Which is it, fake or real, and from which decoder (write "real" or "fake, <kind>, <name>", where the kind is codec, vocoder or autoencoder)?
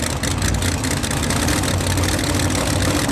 real